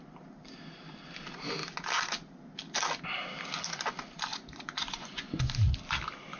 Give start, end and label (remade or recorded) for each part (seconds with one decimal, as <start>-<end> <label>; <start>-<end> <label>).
0.0-4.3 recorded; 4.3-5.5 remade; 5.5-6.4 recorded